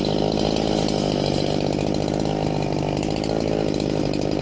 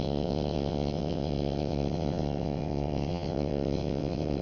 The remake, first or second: second